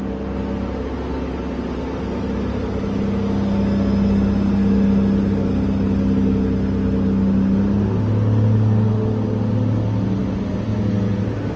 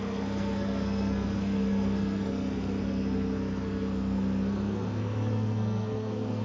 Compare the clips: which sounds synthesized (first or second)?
second